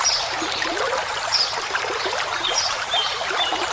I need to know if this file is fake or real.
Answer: fake